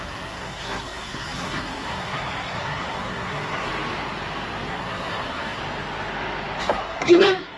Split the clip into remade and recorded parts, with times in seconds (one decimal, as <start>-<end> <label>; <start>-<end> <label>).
0.0-3.7 remade; 3.7-4.7 recorded; 4.7-5.6 remade; 5.6-6.6 recorded; 6.6-7.6 remade